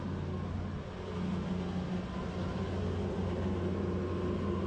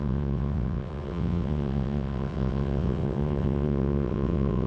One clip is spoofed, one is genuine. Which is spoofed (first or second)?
second